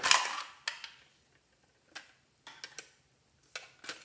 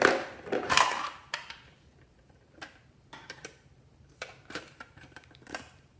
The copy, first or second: second